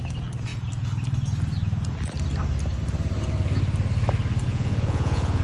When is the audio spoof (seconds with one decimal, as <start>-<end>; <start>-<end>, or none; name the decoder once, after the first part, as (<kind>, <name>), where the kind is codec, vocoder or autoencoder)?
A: 4.5-5.4 (vocoder, Vocos)